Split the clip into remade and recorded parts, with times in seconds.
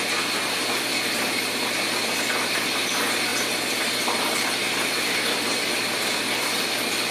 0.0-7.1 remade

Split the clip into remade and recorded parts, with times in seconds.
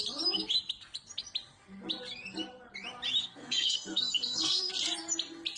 0.0-3.2 recorded; 3.2-4.7 remade; 4.7-5.6 recorded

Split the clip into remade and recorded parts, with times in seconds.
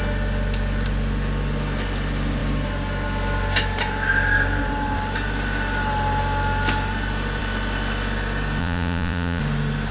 0.0-8.6 recorded; 8.6-9.4 remade; 9.4-9.9 recorded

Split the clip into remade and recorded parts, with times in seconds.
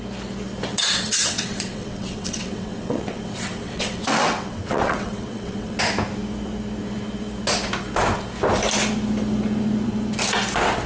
0.0-0.7 recorded; 0.7-5.8 remade; 5.8-10.9 recorded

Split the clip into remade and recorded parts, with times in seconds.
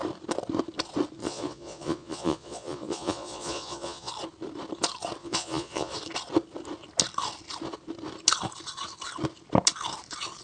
0.0-1.2 recorded; 1.2-4.1 remade; 4.1-5.2 recorded; 5.2-5.9 remade; 5.9-10.4 recorded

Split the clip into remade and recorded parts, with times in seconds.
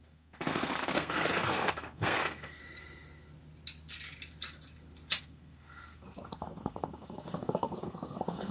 0.0-2.6 remade; 2.6-5.2 recorded; 5.2-8.5 remade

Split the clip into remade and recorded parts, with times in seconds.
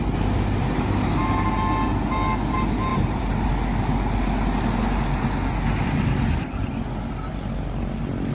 0.0-2.9 recorded; 2.9-3.5 remade; 3.5-8.3 recorded